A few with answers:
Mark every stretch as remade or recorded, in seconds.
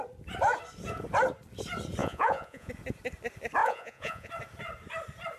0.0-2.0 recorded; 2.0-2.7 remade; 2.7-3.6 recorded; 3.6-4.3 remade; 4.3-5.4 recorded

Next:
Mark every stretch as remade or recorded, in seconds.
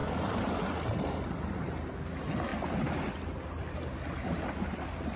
0.0-5.2 recorded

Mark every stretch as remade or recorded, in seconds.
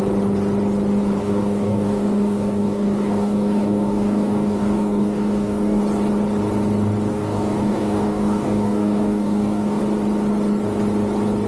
0.0-1.2 recorded; 1.2-5.8 remade; 5.8-7.1 recorded; 7.1-9.8 remade; 9.8-11.5 recorded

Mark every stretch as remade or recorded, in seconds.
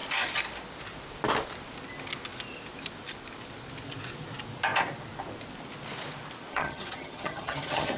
0.0-6.5 recorded; 6.5-8.0 remade